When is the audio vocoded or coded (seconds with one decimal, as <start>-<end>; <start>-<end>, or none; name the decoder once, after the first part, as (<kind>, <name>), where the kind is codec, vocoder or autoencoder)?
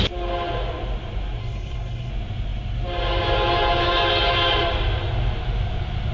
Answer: 1.4-2.1 (codec, HILCodec)